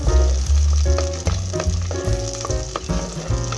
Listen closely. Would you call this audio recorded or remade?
recorded